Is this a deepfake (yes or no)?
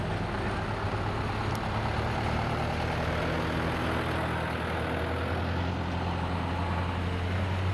no